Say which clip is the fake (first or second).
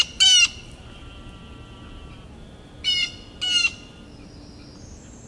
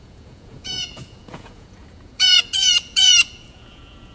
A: second